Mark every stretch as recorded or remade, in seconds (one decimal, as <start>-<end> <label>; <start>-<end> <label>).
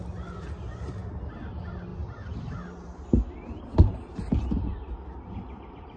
0.0-6.0 recorded